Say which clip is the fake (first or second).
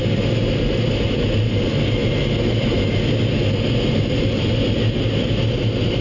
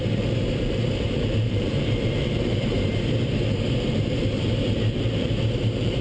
second